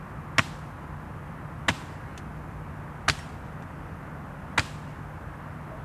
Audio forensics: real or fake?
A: real